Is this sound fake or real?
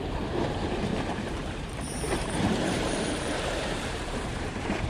fake